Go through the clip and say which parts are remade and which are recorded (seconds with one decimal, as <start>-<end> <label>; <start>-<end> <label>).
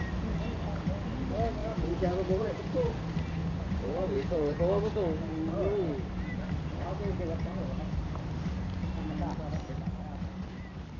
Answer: 0.0-1.6 recorded; 1.6-2.9 remade; 2.9-3.4 recorded; 3.4-4.6 remade; 4.6-11.0 recorded